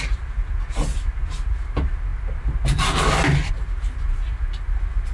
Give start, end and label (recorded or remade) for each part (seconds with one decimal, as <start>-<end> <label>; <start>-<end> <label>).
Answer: 0.0-5.1 recorded